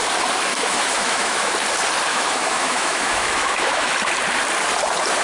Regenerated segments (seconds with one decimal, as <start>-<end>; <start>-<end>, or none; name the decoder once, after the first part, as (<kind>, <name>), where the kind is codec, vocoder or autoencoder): 0.5-1.5 (autoencoder, DAC-VAE); 2.1-3.9